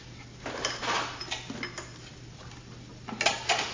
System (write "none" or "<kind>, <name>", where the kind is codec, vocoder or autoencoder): none